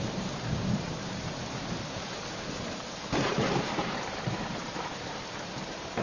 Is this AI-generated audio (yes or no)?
yes